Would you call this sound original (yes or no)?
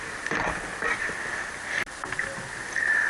yes